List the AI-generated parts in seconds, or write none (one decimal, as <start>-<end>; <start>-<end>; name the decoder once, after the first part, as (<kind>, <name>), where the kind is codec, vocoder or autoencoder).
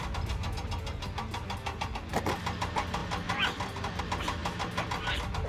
none